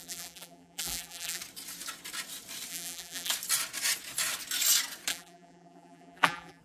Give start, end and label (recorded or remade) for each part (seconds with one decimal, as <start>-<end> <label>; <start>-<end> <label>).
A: 0.0-1.4 remade; 1.4-2.7 recorded; 2.7-3.3 remade; 3.3-5.1 recorded; 5.1-6.6 remade